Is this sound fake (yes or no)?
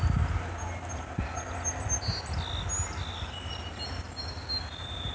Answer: no